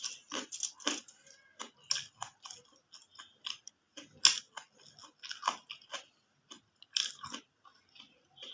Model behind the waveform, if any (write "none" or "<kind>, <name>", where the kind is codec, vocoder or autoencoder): none